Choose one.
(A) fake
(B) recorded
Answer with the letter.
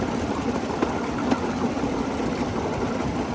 B